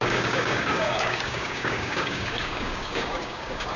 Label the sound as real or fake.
fake